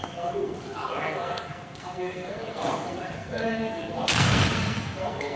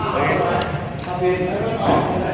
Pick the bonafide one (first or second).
second